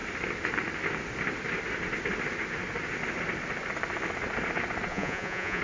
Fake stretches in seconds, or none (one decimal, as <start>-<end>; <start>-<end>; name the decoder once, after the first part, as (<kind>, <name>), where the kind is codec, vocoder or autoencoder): 4.9-5.6 (vocoder, Vocos)